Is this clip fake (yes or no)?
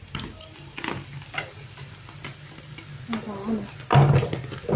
no